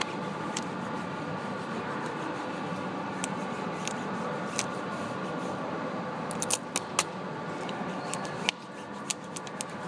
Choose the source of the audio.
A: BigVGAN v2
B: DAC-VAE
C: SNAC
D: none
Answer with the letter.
D